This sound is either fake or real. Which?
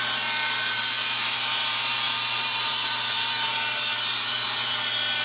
fake